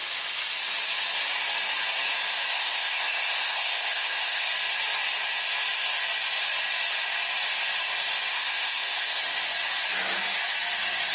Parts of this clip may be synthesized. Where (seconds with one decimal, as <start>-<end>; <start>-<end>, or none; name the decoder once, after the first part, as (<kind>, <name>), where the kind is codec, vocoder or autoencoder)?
2.5-4.5 (codec, ZipCodec); 8.3-9.2